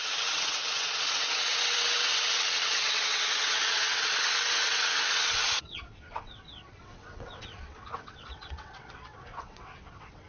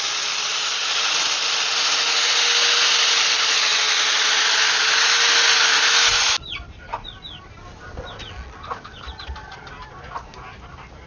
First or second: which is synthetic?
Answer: first